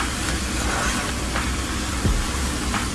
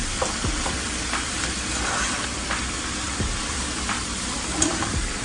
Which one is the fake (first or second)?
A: second